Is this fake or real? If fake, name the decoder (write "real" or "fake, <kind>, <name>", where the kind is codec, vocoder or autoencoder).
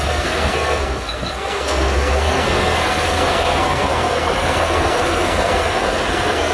fake, codec, SNAC